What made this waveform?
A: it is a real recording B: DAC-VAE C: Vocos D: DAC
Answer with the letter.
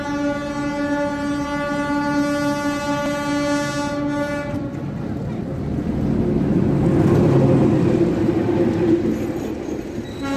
A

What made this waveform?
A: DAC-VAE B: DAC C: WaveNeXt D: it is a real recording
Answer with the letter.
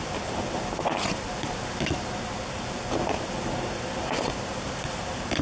D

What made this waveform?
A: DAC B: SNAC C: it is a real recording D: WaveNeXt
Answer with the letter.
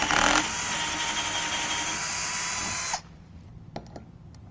C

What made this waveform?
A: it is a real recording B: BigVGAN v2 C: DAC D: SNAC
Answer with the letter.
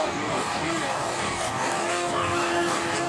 C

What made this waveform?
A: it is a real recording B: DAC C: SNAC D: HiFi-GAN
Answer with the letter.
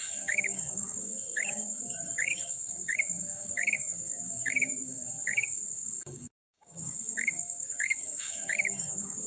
B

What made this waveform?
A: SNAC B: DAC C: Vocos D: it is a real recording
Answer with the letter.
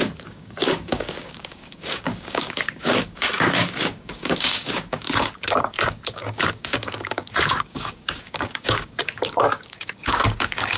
B